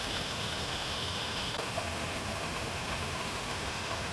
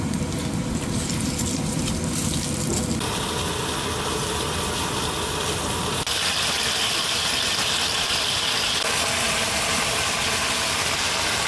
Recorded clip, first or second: second